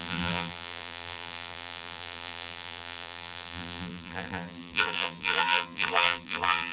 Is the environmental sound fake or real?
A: fake